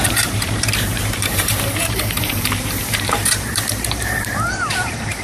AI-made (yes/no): yes